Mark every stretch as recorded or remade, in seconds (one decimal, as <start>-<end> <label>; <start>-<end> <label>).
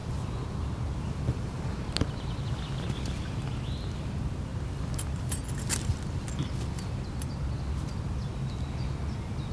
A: 0.0-9.5 recorded